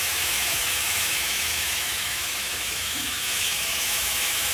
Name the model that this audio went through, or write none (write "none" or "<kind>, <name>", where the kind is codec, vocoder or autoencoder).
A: autoencoder, DAC-VAE